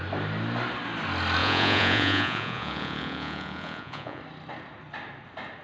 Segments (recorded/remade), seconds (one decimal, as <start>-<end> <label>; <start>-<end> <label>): 0.0-1.4 recorded; 1.4-4.2 remade; 4.2-5.6 recorded

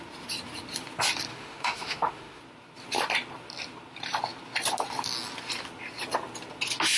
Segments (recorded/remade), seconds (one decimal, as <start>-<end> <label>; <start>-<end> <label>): 0.0-1.3 recorded; 1.3-2.4 remade; 2.4-7.0 recorded

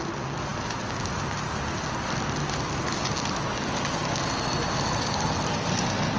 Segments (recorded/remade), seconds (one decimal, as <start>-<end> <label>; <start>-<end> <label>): 0.0-6.2 recorded